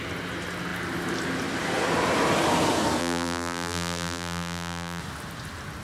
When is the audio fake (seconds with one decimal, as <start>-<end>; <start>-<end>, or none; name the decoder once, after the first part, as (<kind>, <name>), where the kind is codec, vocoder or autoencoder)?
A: 3.0-5.0 (vocoder, BigVGAN v2)

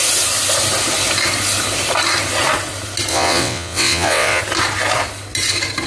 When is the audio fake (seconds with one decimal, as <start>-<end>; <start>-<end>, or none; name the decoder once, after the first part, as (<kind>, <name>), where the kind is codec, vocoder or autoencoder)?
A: 3.1-4.4 (vocoder, WaveNeXt)

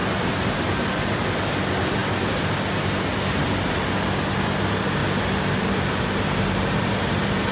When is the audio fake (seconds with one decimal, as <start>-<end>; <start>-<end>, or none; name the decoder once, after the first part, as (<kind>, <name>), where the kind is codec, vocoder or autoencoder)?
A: 0.0-0.8 (vocoder, BigVGAN v2); 5.0-7.5

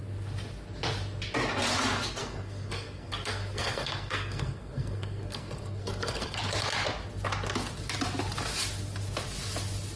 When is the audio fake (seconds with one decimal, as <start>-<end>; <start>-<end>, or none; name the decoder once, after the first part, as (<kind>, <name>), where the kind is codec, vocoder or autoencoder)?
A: 2.2-6.4 (codec, SNAC)

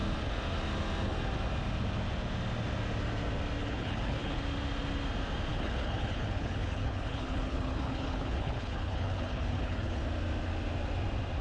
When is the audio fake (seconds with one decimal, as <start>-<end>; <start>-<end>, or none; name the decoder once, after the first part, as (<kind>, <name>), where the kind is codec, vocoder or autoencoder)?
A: 3.6-4.4 (codec, HILCodec); 5.5-10.0

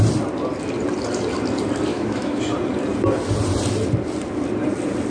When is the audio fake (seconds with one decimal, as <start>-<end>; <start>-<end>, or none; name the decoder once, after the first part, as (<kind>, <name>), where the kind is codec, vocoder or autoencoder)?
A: 1.9-2.4 (autoencoder, DAC-VAE)